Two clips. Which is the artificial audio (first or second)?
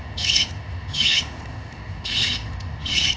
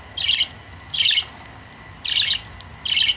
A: first